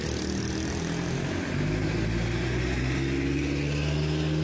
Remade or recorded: recorded